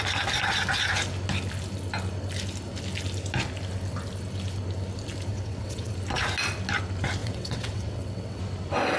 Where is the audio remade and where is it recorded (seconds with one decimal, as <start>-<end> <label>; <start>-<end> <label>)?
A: 0.0-5.3 recorded; 5.3-5.9 remade; 5.9-7.2 recorded; 7.2-8.4 remade; 8.4-9.0 recorded